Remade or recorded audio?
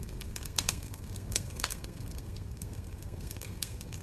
remade